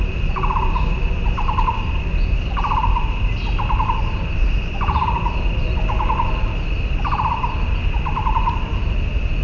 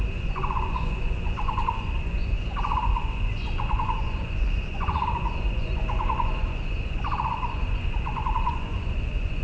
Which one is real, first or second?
first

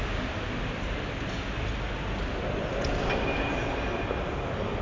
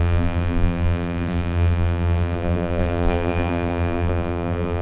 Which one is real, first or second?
first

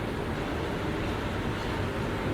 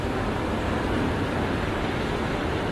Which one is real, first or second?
first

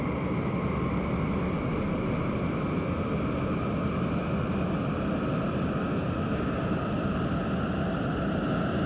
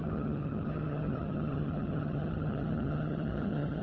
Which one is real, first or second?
first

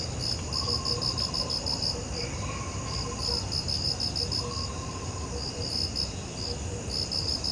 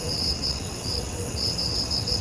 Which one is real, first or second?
first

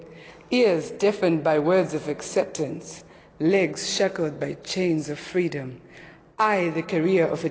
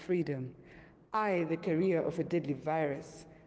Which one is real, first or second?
first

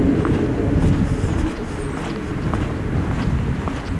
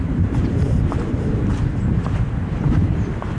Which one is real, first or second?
first